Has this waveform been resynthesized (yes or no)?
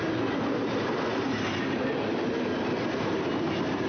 no